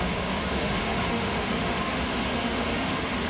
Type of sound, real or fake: fake